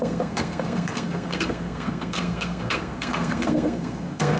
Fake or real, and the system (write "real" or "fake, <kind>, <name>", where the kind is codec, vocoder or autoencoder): fake, codec, SNAC